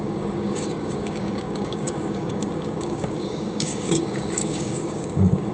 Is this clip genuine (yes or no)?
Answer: no